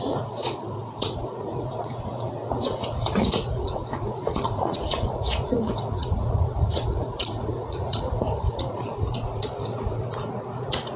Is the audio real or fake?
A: fake